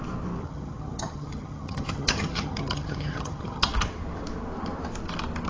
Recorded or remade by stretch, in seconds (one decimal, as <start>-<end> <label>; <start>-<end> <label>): 0.0-0.4 recorded; 0.4-3.7 remade; 3.7-5.5 recorded